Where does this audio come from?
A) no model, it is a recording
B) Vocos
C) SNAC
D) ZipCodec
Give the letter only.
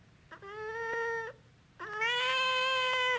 A